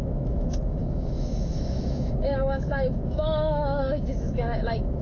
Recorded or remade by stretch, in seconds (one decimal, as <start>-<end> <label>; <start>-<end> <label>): 0.0-5.0 remade

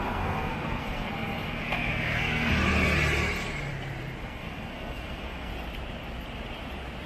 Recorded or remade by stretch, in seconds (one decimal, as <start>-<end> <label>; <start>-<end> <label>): 0.0-2.5 remade; 2.5-4.2 recorded; 4.2-5.5 remade; 5.5-7.1 recorded

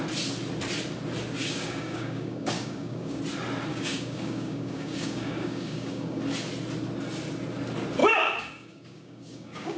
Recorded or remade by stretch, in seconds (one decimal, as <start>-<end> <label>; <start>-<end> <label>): 0.0-1.4 recorded; 1.4-3.2 remade; 3.2-3.7 recorded; 3.7-6.2 remade; 6.2-8.0 recorded; 8.0-9.8 remade

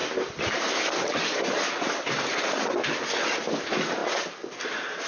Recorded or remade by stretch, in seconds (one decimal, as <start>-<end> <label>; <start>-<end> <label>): 0.0-5.1 recorded

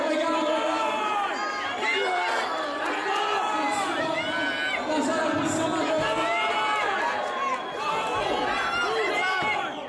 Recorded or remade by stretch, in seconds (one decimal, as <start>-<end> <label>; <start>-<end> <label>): 0.0-9.9 recorded

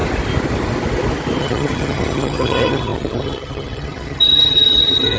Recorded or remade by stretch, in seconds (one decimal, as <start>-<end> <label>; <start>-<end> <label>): 0.0-1.4 recorded; 1.4-5.2 remade

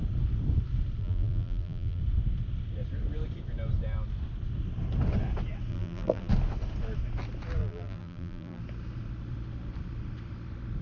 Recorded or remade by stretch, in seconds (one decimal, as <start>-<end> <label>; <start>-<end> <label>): 0.0-1.0 recorded; 1.0-2.0 remade; 2.0-5.7 recorded; 5.7-6.3 remade; 6.3-7.6 recorded; 7.6-8.6 remade; 8.6-10.8 recorded